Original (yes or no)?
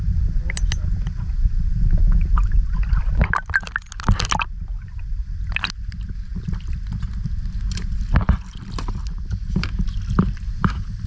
yes